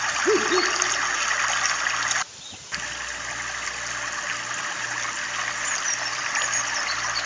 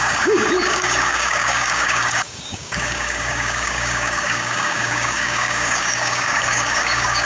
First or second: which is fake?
second